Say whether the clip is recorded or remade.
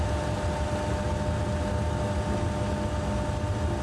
recorded